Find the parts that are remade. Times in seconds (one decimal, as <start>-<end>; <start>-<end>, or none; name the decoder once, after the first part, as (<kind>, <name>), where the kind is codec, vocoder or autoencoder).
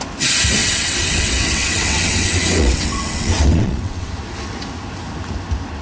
0.6-4.1 (vocoder, WaveNeXt)